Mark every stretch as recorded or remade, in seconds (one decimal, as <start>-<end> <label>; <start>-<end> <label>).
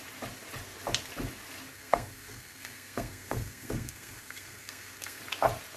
0.0-1.7 recorded; 1.7-5.2 remade; 5.2-5.8 recorded